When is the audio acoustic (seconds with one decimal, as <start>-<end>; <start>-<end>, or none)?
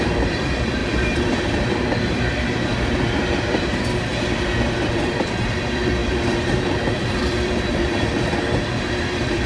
4.1-4.7